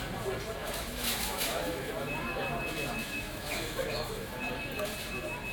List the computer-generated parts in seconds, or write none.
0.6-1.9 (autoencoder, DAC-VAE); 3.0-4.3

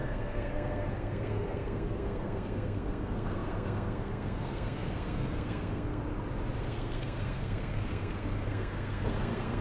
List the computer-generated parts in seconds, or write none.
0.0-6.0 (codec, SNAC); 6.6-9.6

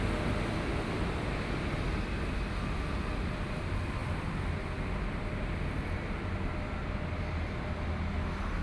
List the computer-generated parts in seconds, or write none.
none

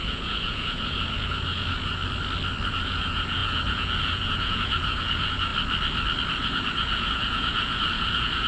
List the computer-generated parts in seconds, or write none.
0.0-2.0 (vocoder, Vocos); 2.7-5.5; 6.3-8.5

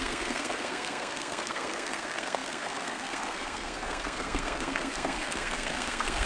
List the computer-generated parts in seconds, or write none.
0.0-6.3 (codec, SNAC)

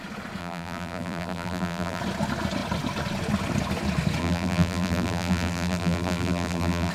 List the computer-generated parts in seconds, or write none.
0.4-2.0 (vocoder, BigVGAN v2); 4.2-6.9

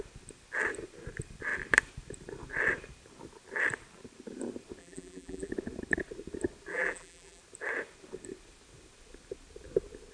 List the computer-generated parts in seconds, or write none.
4.8-5.5 (vocoder, BigVGAN v2); 6.7-7.4

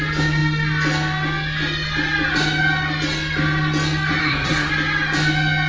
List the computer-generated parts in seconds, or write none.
4.2-4.7 (codec, SNAC)